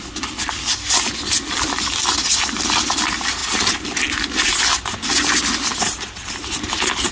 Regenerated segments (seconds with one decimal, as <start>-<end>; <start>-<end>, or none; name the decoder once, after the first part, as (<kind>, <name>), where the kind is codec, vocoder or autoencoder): none